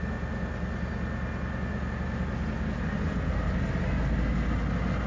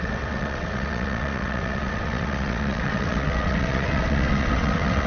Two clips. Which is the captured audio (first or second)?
first